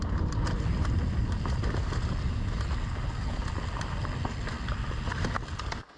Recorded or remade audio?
recorded